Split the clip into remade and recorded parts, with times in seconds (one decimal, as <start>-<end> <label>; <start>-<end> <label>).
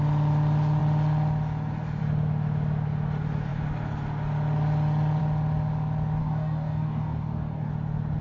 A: 0.0-6.2 recorded; 6.2-7.7 remade; 7.7-8.2 recorded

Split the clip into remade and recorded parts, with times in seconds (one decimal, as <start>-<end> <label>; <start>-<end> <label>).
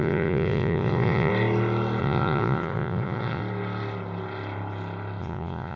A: 0.0-1.3 remade; 1.3-2.0 recorded; 2.0-3.4 remade; 3.4-5.2 recorded; 5.2-5.8 remade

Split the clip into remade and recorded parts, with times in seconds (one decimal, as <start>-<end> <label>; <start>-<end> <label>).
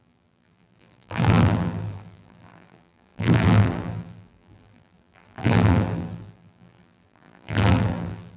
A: 0.0-8.4 remade